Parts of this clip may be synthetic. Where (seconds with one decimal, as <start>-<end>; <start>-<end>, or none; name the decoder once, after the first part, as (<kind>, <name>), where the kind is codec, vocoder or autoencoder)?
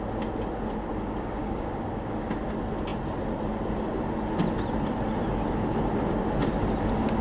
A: 0.9-2.3 (codec, DAC)